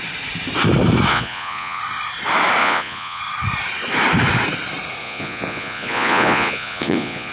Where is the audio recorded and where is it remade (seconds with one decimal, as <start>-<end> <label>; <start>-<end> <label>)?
0.0-1.1 recorded; 1.1-1.8 remade; 1.8-2.6 recorded; 2.6-3.2 remade; 3.2-5.0 recorded; 5.0-7.3 remade